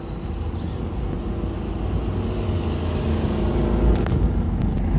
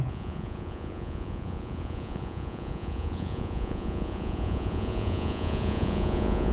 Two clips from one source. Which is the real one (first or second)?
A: first